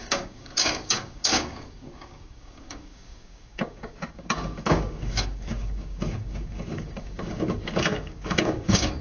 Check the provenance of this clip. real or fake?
fake